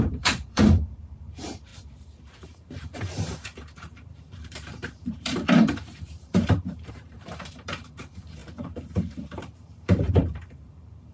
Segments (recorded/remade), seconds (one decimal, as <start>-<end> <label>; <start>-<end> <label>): 0.0-11.1 remade